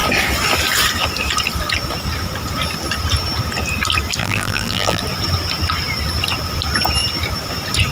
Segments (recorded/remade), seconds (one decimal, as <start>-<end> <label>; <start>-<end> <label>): 0.0-4.2 recorded; 4.2-5.0 remade; 5.0-7.9 recorded